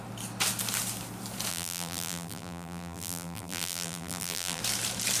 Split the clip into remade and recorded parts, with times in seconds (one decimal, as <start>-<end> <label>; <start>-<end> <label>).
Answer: 0.0-1.5 recorded; 1.5-4.6 remade; 4.6-5.2 recorded